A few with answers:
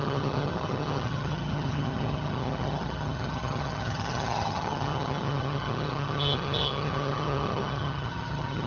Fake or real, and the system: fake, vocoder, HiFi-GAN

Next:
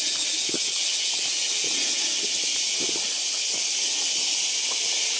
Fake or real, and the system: real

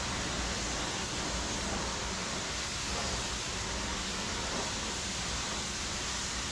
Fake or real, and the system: real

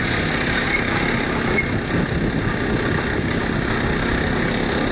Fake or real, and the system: real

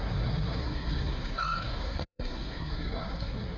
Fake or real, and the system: fake, codec, SNAC